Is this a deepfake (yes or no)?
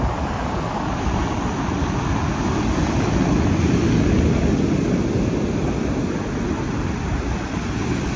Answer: no